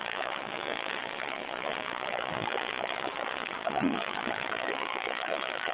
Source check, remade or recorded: remade